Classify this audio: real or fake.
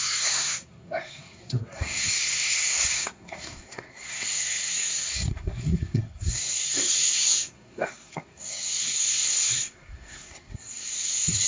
fake